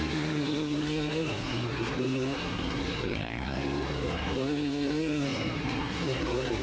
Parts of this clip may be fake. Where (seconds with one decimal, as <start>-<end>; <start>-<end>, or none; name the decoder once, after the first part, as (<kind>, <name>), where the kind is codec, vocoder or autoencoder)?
0.0-6.6 (codec, SNAC)